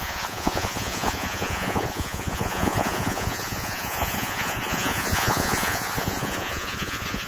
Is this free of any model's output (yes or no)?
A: no